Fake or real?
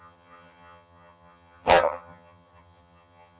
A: fake